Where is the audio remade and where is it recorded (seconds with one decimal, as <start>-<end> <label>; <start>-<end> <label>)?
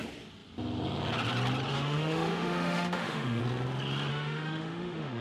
0.0-1.7 recorded; 1.7-3.4 remade; 3.4-4.1 recorded; 4.1-5.2 remade